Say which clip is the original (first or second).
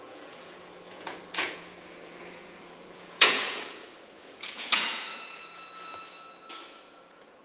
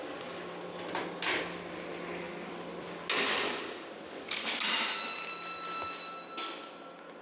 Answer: second